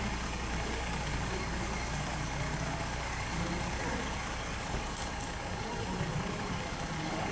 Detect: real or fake fake